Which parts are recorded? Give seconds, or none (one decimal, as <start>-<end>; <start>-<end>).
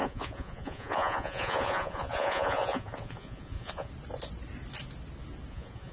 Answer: 3.9-5.5